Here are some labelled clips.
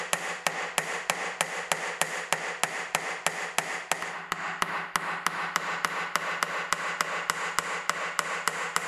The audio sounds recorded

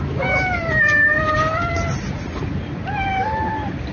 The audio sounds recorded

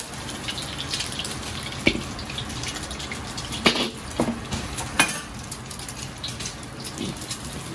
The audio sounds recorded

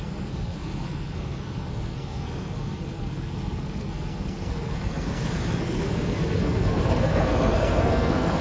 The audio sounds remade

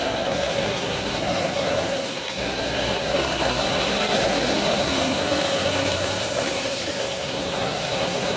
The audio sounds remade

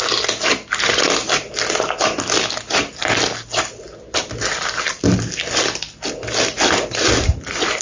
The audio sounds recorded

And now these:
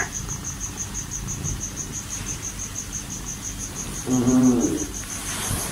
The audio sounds remade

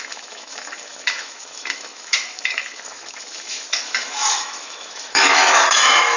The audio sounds remade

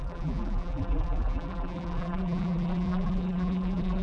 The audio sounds remade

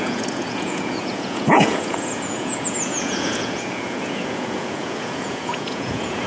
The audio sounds remade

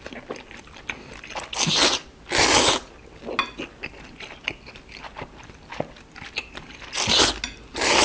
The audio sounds recorded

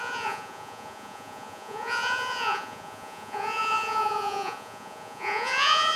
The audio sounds remade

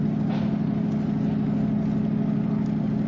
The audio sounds recorded